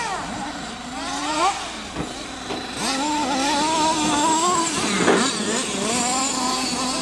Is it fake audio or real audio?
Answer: real